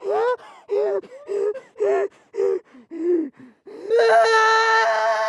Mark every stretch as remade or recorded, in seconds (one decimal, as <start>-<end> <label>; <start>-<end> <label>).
0.0-5.3 recorded